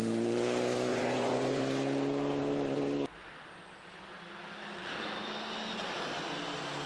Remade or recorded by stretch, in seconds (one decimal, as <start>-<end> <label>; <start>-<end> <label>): 0.0-0.9 recorded; 0.9-1.6 remade; 1.6-6.9 recorded